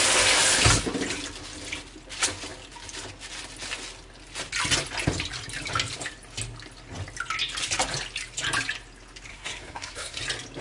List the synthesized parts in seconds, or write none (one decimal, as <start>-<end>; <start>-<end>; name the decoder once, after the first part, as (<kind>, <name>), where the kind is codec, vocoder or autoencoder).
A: 9.3-10.2 (codec, SNAC)